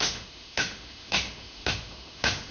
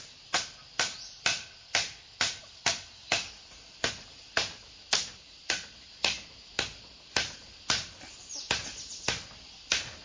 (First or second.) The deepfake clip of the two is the first